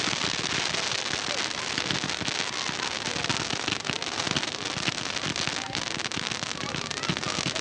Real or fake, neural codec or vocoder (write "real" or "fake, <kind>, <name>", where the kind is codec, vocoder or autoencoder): real